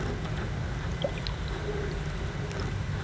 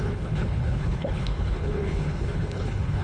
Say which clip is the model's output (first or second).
second